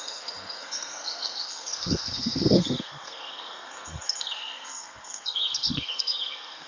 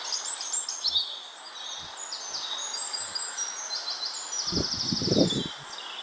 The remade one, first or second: first